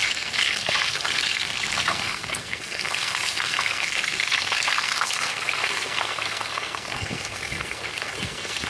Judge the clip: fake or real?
fake